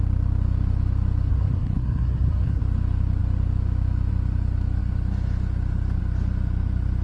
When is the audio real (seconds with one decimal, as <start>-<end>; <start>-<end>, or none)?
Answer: 0.0-1.3; 2.6-7.0